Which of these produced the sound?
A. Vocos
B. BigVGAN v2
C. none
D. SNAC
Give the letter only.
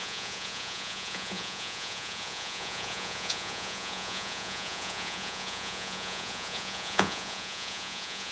A